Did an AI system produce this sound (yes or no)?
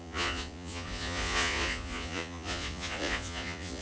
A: yes